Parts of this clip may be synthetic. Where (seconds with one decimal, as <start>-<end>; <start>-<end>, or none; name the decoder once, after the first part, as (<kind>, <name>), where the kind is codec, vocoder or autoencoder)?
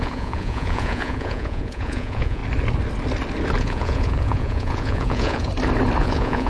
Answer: 0.0-2.4 (vocoder, Vocos); 3.6-5.5; 6.0-6.5